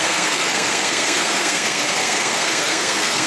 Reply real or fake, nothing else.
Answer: fake